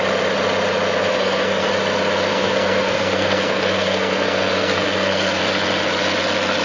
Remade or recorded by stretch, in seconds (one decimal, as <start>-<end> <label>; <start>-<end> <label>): 0.0-1.1 recorded; 1.1-1.7 remade; 1.7-2.3 recorded; 2.3-5.4 remade; 5.4-6.6 recorded